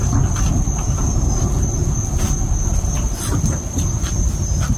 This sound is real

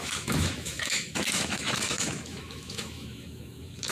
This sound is fake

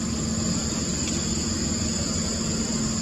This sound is real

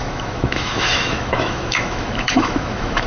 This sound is fake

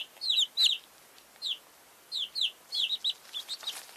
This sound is real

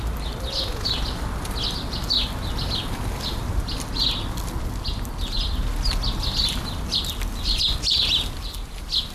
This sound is real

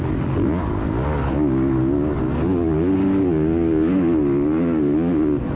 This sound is real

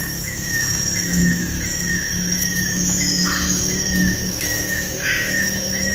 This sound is fake